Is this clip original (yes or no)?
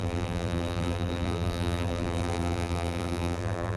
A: no